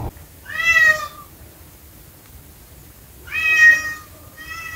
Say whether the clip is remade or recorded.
recorded